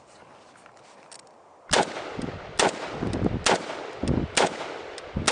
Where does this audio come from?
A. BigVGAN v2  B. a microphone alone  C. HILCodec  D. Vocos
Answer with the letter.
B